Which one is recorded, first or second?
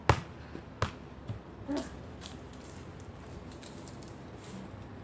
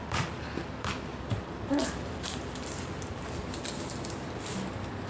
first